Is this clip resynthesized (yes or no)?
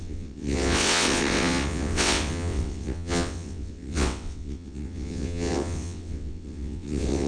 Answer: yes